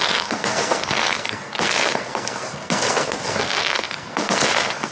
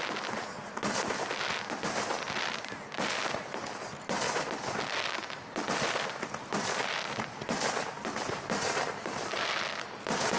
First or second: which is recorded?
second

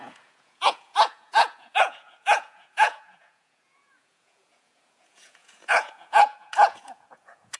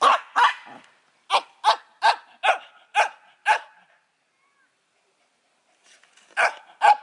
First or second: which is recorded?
second